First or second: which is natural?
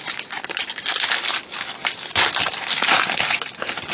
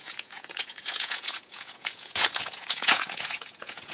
first